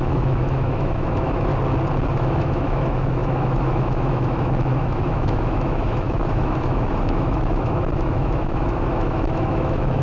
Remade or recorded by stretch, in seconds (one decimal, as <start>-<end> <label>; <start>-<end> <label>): 0.0-1.5 remade; 1.5-2.1 recorded; 2.1-10.0 remade